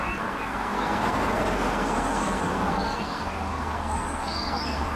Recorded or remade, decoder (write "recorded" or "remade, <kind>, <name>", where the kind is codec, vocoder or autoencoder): remade, codec, SNAC